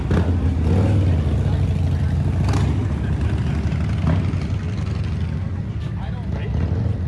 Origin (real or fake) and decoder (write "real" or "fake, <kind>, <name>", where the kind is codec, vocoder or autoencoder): real